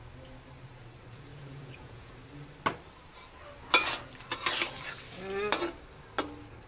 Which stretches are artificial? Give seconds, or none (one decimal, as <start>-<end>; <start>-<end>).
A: 1.3-2.1